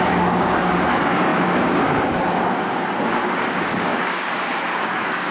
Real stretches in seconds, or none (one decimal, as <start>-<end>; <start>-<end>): none